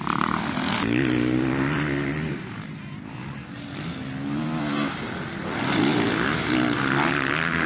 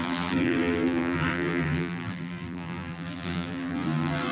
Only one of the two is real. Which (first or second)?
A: first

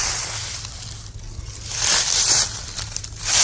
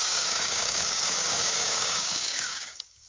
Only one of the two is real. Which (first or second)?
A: first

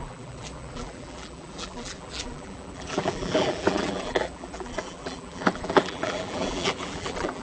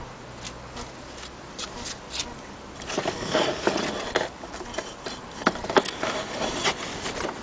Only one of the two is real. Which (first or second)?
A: second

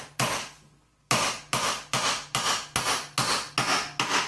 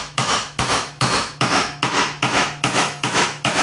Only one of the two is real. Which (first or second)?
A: first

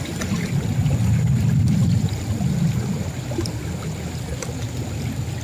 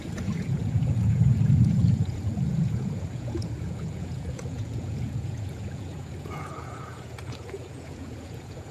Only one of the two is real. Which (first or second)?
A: first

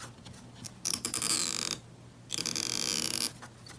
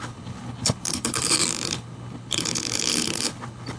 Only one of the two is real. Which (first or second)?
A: first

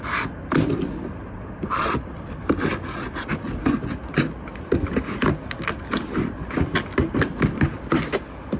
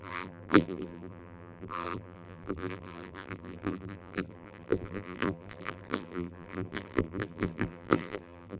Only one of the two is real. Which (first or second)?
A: first